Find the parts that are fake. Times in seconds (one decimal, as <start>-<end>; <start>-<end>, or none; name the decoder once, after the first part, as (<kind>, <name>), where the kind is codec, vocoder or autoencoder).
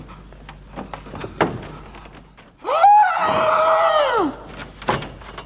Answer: none